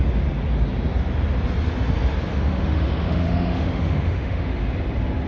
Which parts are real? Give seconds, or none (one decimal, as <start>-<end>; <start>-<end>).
0.0-2.3; 4.6-5.3